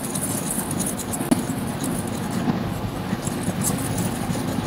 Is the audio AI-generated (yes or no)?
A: no